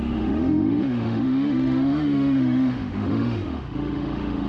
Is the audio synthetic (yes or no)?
yes